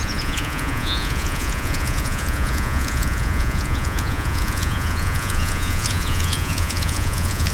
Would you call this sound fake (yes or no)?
yes